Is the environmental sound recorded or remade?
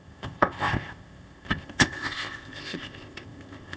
remade